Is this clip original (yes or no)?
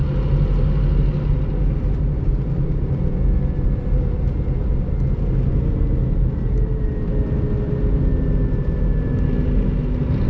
yes